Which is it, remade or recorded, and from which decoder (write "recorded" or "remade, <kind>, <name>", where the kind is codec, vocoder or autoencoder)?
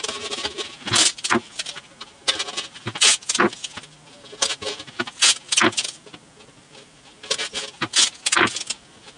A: recorded